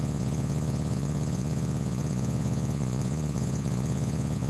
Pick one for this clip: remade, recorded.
remade